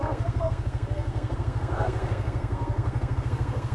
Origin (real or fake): fake